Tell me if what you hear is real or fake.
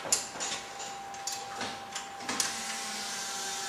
real